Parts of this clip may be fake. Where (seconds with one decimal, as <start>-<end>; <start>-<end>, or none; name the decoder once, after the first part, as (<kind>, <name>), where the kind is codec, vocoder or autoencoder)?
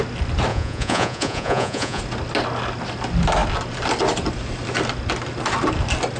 0.5-2.0 (vocoder, Vocos)